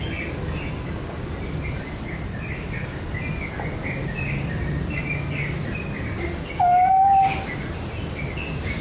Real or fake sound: real